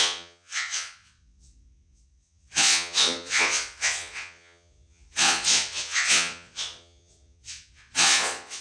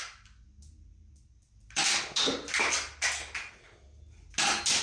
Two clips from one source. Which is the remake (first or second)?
first